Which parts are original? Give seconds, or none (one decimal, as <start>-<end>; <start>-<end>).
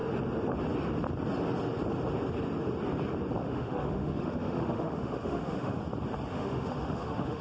0.0-3.4; 5.8-6.3